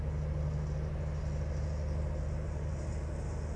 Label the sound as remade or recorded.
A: recorded